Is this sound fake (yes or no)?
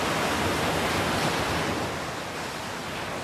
no